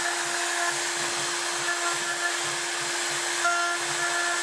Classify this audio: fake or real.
real